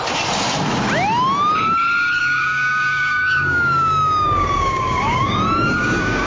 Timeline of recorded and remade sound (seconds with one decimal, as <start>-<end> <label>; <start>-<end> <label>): 0.0-2.2 recorded; 2.2-6.3 remade